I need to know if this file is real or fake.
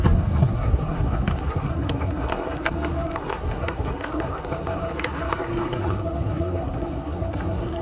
fake